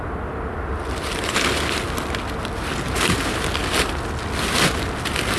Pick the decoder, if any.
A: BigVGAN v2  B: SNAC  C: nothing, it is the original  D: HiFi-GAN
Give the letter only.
C